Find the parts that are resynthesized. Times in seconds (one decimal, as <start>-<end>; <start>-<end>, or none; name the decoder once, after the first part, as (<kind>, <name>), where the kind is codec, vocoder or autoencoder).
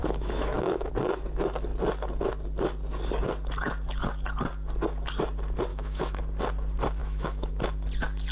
0.0-0.9 (autoencoder, DAC-VAE); 5.7-6.2; 7.0-7.5